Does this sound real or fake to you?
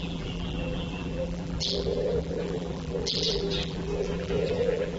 fake